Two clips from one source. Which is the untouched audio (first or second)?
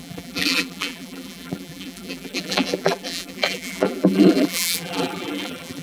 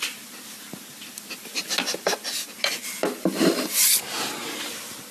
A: second